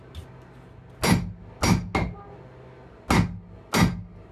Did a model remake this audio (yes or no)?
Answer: no